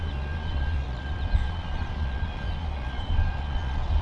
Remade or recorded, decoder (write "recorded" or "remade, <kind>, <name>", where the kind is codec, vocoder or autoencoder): remade, vocoder, Vocos